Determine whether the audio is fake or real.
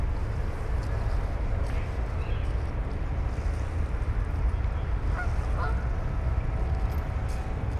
real